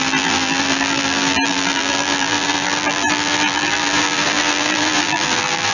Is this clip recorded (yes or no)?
no